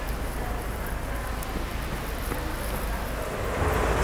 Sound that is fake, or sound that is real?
real